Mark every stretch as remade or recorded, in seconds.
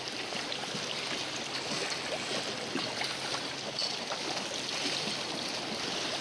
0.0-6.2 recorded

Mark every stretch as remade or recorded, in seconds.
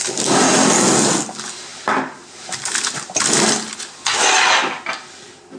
0.0-5.6 recorded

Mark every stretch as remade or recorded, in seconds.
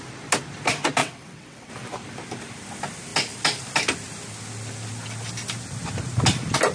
0.0-1.0 recorded; 1.0-1.7 remade; 1.7-6.7 recorded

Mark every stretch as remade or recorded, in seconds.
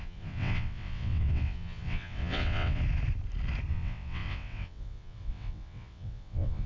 0.0-2.8 remade; 2.8-3.7 recorded; 3.7-6.7 remade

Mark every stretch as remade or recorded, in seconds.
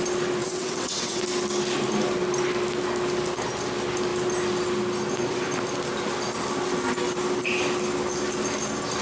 0.0-0.4 recorded; 0.4-1.2 remade; 1.2-9.0 recorded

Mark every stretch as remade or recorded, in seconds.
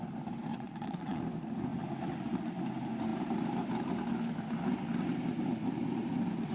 0.0-0.5 recorded; 0.5-1.2 remade; 1.2-6.5 recorded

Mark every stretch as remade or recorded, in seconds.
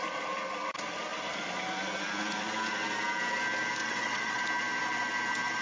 0.0-3.8 recorded; 3.8-4.4 remade; 4.4-5.6 recorded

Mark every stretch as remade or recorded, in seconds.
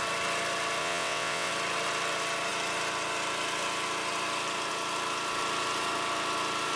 0.0-0.8 recorded; 0.8-1.5 remade; 1.5-6.8 recorded